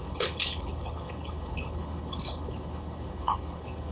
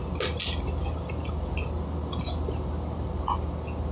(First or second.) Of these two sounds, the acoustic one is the second